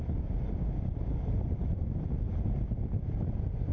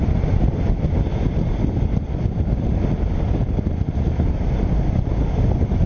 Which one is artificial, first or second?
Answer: second